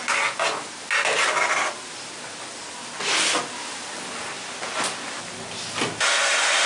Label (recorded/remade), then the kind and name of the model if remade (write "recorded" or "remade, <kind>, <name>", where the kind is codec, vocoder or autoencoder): recorded